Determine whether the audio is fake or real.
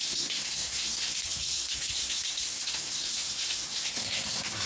fake